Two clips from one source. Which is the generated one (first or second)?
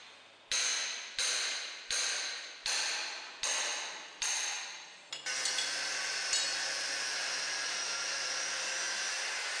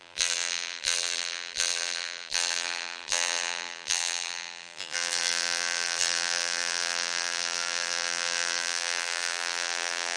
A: second